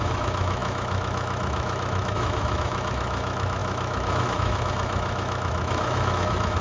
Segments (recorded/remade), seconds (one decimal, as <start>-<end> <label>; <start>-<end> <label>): 0.0-6.6 remade